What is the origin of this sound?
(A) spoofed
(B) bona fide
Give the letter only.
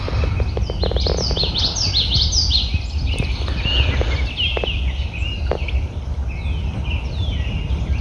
B